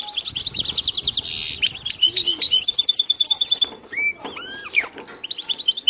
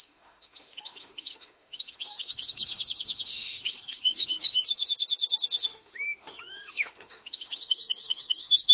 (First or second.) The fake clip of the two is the second